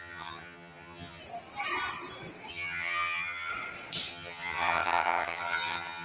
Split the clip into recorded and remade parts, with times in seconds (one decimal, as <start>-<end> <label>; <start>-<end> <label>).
0.0-1.2 remade; 1.2-2.5 recorded; 2.5-3.5 remade; 3.5-4.1 recorded; 4.1-6.0 remade